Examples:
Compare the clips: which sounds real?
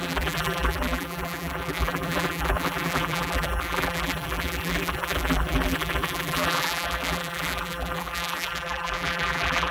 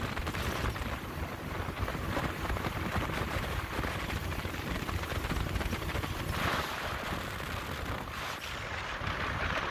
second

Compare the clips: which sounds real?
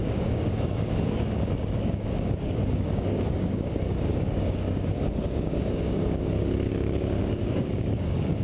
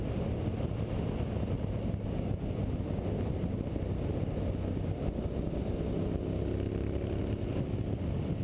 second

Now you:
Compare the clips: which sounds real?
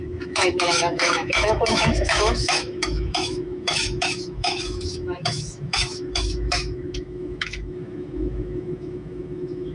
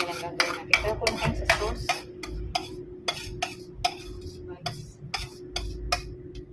second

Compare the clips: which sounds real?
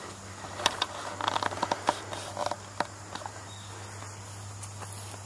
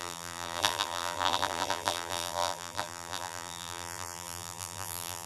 first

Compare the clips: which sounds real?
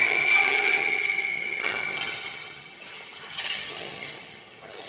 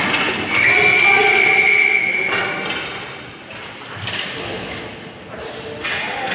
second